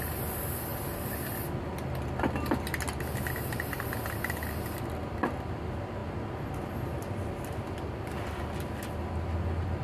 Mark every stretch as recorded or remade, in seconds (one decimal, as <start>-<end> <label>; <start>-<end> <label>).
0.0-9.8 recorded